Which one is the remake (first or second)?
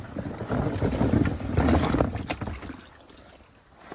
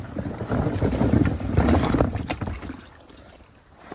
second